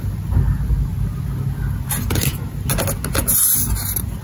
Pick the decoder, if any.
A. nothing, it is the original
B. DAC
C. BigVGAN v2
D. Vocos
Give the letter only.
A